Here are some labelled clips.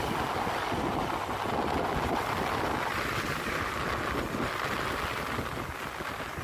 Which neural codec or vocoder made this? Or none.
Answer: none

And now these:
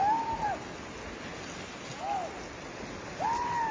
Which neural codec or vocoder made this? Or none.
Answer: none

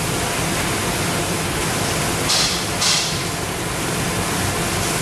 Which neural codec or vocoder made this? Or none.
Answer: none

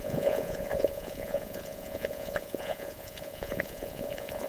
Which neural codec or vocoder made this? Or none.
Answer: vocoder, Vocos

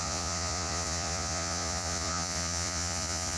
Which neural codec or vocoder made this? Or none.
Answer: vocoder, Vocos